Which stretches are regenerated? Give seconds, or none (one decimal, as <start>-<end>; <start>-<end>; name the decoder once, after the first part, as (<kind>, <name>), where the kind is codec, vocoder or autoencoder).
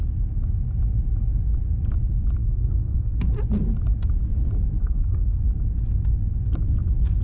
2.4-3.2 (codec, SNAC); 4.8-5.4